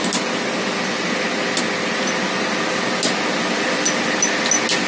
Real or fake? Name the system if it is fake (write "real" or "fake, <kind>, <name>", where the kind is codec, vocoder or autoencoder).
real